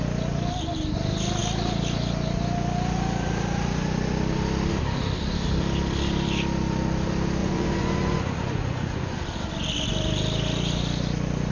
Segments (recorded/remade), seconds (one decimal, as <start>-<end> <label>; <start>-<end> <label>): 0.0-7.4 recorded; 7.4-9.2 remade; 9.2-11.5 recorded